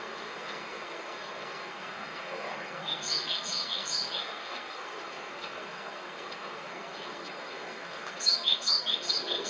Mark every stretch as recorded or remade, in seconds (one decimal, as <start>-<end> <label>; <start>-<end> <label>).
0.0-9.5 remade